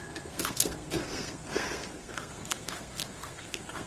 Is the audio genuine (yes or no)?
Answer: no